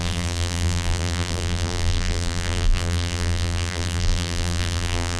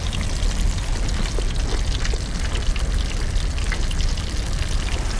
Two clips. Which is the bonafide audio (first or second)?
second